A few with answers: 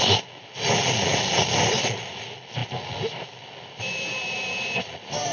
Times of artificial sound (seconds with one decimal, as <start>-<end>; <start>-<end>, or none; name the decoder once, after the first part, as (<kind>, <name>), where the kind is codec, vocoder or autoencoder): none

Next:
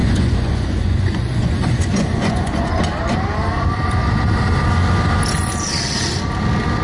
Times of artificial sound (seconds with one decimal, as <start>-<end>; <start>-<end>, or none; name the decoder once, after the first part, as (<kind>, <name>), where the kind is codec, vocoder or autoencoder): 0.0-2.8 (vocoder, Vocos)

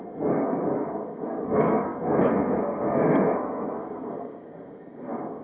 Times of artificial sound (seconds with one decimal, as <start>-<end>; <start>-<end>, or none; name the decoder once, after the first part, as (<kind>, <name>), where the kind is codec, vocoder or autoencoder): 0.0-5.4 (codec, SNAC)